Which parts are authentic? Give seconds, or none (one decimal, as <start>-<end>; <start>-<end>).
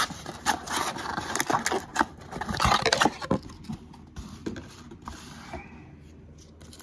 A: 0.0-1.9; 5.7-6.8